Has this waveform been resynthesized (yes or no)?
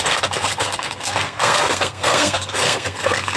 yes